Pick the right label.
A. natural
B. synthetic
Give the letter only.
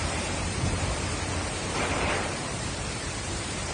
B